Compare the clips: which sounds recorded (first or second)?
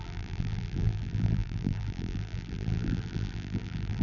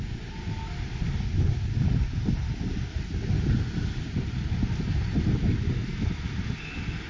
second